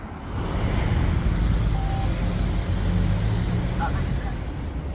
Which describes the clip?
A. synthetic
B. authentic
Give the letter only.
B